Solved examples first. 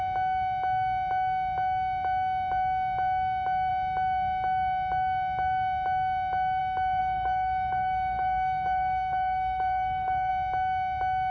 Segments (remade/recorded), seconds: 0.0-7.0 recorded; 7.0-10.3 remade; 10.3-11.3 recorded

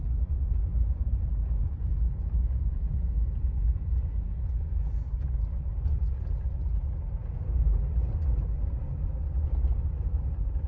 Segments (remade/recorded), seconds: 0.0-0.4 recorded; 0.4-4.3 remade; 4.3-7.2 recorded; 7.2-7.8 remade; 7.8-10.7 recorded